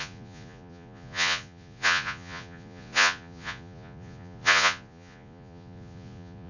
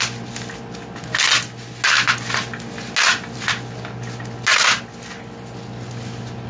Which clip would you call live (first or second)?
second